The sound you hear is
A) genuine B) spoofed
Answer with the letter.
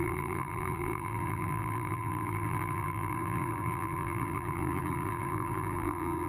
B